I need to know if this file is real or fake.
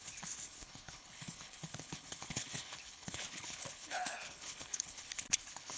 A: fake